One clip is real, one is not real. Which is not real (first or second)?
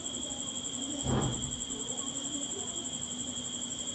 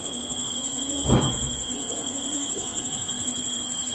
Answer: second